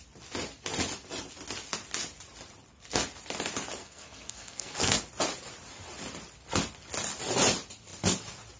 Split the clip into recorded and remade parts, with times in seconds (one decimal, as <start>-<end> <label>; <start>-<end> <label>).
0.0-3.8 recorded; 3.8-5.0 remade; 5.0-8.6 recorded